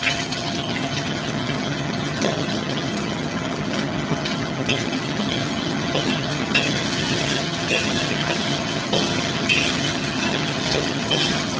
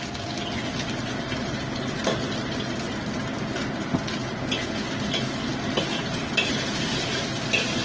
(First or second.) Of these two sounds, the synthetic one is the first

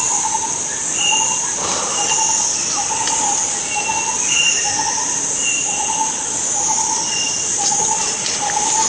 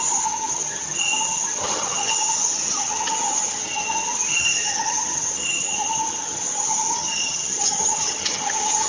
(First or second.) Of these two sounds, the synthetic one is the second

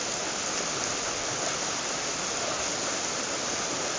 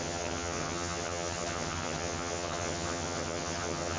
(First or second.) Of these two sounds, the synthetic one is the second